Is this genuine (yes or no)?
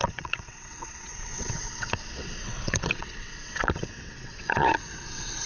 no